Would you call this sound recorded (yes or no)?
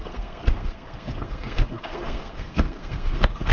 no